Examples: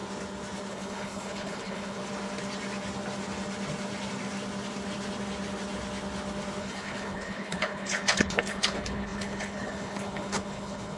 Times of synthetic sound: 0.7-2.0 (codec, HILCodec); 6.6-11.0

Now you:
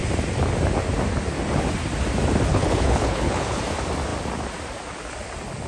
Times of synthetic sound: 2.5-3.6 (codec, HILCodec)

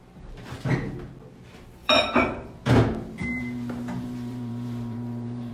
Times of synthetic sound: 1.8-2.7 (vocoder, BigVGAN v2); 3.2-5.5

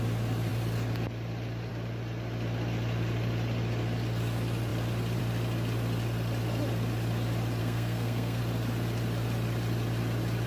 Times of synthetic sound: 7.6-8.4 (codec, SNAC)

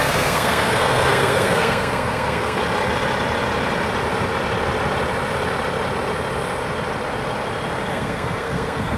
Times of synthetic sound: 0.0-2.6 (codec, SNAC); 7.9-9.0

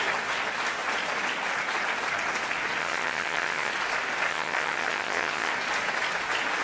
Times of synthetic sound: 2.8-3.7 (vocoder, HiFi-GAN); 4.3-5.5